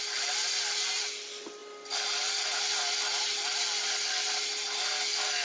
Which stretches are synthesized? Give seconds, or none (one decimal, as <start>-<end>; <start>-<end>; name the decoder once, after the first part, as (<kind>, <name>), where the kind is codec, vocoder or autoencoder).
none